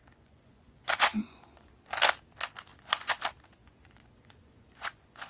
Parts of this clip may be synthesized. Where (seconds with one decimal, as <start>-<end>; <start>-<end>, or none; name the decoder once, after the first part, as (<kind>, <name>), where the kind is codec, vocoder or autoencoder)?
0.0-1.7 (vocoder, Vocos); 2.7-3.2; 3.6-5.3